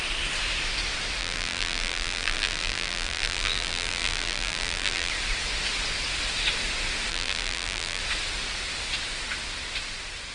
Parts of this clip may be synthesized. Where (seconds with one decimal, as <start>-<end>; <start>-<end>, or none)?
1.2-5.1; 7.1-8.0